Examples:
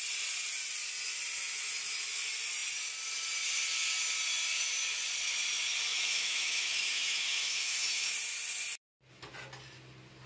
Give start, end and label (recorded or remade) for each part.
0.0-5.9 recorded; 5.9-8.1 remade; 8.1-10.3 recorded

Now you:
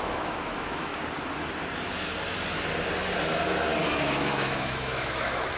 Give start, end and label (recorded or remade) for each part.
0.0-0.9 remade; 0.9-4.0 recorded; 4.0-5.6 remade

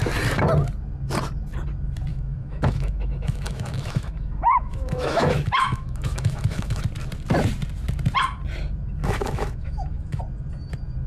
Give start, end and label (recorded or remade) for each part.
0.0-2.1 recorded; 2.1-6.8 remade; 6.8-9.0 recorded; 9.0-10.2 remade; 10.2-11.1 recorded

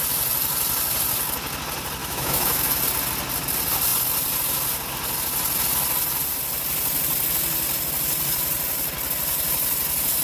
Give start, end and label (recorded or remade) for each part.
0.0-2.0 recorded; 2.0-2.8 remade; 2.8-10.2 recorded

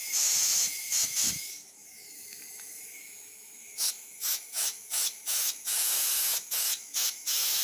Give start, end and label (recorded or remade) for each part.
0.0-7.6 remade

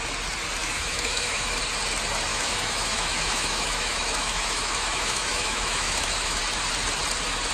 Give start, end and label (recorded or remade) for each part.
0.0-0.6 recorded; 0.6-1.6 remade; 1.6-2.3 recorded; 2.3-6.4 remade; 6.4-7.5 recorded